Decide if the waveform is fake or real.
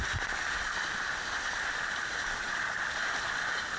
real